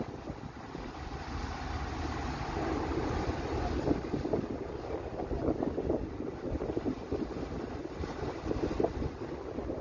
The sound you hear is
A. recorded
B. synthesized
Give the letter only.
A